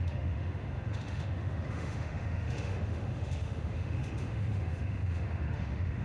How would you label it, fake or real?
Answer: fake